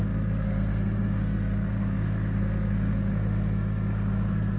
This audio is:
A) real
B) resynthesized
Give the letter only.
B